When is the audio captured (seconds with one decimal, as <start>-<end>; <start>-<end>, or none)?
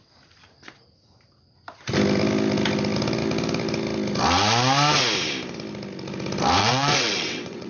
0.0-6.6